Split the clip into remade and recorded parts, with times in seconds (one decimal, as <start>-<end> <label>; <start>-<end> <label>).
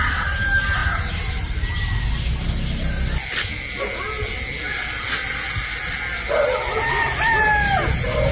0.0-8.3 recorded